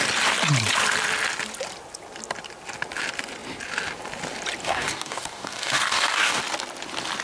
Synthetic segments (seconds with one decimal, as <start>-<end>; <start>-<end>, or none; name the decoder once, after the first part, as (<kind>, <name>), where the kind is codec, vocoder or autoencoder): 4.6-6.4 (codec, DAC)